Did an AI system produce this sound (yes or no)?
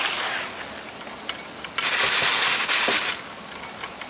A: no